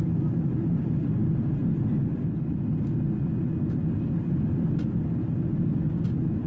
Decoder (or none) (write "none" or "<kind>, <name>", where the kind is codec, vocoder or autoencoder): none